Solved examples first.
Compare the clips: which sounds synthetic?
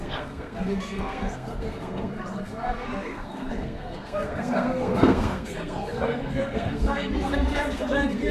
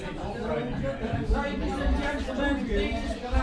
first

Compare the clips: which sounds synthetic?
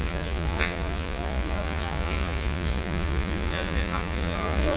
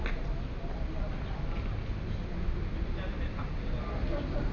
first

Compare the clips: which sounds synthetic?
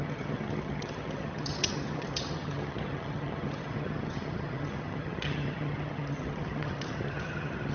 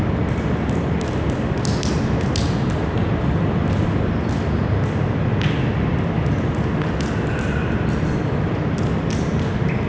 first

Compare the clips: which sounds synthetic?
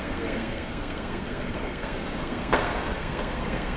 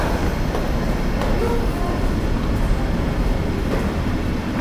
first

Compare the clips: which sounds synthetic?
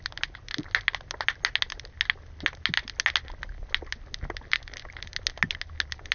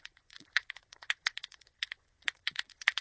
second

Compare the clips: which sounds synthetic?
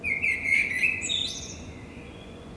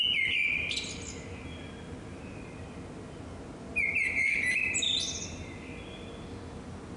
first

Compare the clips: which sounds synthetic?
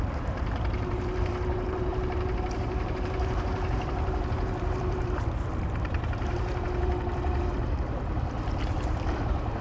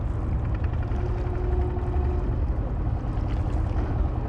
first